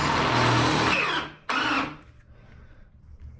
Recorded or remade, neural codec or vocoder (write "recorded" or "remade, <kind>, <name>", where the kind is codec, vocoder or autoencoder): recorded